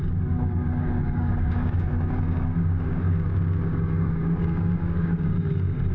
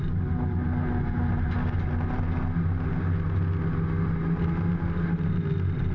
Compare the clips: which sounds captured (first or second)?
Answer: second